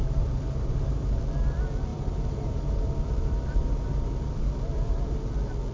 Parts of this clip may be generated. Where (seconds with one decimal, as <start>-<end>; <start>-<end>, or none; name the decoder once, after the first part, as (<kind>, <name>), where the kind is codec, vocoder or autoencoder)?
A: 0.0-1.2 (vocoder, BigVGAN v2); 1.9-5.3